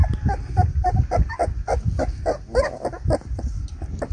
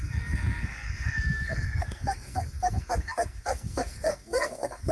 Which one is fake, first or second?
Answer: second